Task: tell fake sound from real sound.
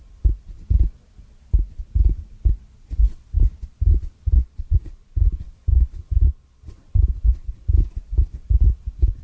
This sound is real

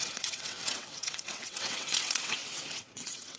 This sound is fake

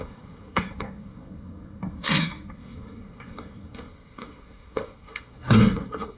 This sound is fake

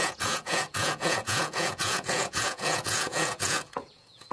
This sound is fake